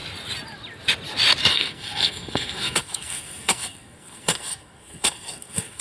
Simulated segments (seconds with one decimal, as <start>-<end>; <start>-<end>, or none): 1.5-5.8